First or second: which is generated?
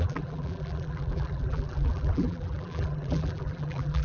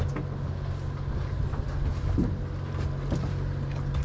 first